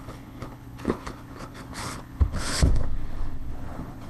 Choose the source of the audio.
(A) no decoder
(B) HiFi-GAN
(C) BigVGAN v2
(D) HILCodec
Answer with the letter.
D